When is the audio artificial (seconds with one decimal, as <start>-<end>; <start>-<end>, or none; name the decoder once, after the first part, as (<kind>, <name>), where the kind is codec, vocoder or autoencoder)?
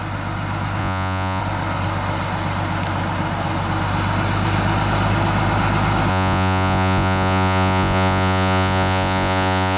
0.8-1.4 (vocoder, Vocos); 6.1-9.8